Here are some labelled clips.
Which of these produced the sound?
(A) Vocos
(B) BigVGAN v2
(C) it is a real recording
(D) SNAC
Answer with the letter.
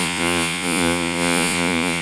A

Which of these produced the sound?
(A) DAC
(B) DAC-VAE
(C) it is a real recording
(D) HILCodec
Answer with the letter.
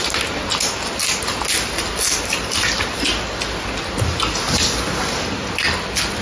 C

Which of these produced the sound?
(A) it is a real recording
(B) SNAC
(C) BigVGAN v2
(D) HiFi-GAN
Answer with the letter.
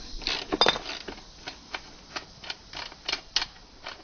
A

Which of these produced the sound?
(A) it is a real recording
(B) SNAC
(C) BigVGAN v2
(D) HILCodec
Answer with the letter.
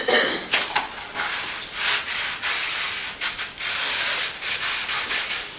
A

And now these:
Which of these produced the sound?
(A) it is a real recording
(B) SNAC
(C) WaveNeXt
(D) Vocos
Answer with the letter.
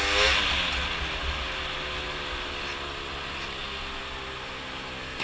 A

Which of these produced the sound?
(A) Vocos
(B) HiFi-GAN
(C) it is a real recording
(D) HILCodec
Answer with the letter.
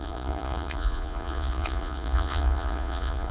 A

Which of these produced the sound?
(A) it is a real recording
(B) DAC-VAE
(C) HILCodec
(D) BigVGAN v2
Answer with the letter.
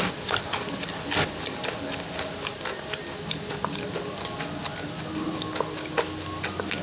A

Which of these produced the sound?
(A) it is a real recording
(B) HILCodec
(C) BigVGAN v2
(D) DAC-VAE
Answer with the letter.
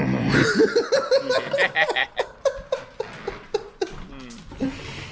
A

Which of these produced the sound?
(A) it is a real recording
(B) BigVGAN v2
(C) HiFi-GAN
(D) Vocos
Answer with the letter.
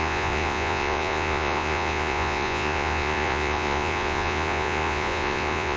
D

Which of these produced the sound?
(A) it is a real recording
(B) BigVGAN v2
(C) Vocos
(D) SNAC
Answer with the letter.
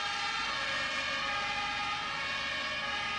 A